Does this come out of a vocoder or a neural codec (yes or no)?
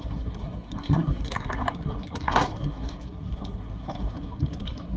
yes